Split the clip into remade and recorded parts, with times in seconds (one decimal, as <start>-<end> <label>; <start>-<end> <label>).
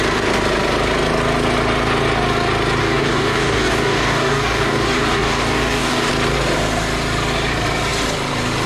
0.0-2.8 recorded; 2.8-6.1 remade; 6.1-8.7 recorded